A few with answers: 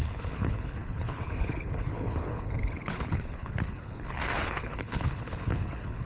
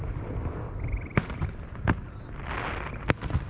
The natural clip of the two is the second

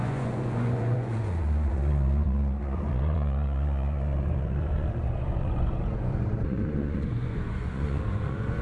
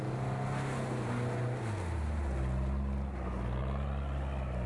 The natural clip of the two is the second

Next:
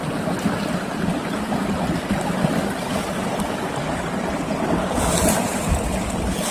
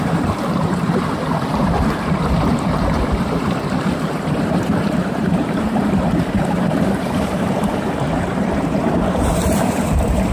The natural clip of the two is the first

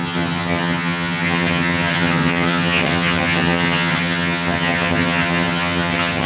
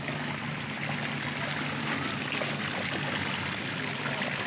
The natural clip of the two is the second